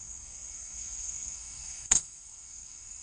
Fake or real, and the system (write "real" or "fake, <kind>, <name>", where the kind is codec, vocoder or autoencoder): fake, codec, SNAC